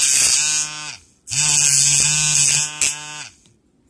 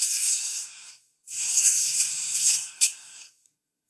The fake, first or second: second